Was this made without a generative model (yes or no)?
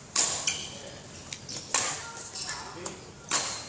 yes